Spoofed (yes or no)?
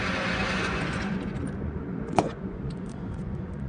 yes